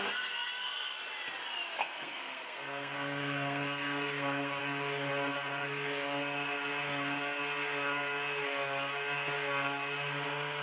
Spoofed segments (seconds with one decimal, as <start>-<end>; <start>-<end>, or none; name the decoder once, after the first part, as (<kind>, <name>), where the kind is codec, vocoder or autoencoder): 1.8-4.6 (codec, SNAC)